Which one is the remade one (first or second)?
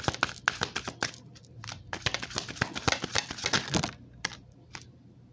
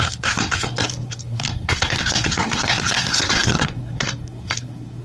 second